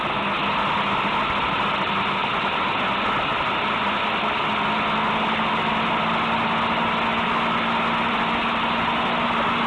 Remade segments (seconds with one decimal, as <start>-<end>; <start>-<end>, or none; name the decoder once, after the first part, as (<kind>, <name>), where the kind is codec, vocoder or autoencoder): none